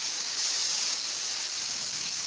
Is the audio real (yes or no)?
no